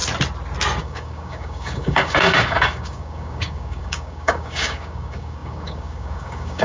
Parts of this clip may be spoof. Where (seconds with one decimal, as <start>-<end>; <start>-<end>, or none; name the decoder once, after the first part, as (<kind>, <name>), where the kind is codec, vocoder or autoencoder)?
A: 0.8-6.6 (codec, DAC)